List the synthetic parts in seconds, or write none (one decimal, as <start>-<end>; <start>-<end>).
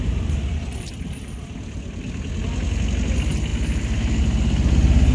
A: none